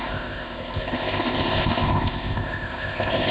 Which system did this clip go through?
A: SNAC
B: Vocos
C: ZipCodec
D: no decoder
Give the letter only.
C